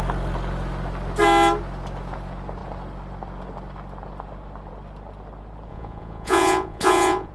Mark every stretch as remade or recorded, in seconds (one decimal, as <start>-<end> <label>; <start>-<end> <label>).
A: 0.0-5.7 recorded; 5.7-7.3 remade